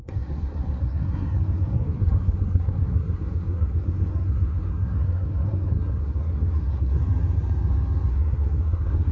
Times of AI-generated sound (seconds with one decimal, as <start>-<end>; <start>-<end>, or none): 0.0-7.0; 8.1-9.1